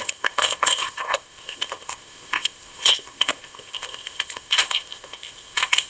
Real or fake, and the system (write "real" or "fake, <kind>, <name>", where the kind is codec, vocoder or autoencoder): fake, codec, ZipCodec